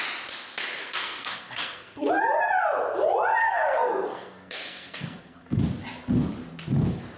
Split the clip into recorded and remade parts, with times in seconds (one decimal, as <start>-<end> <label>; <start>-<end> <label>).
0.0-0.8 recorded; 0.8-2.1 remade; 2.1-3.4 recorded; 3.4-5.6 remade; 5.6-7.2 recorded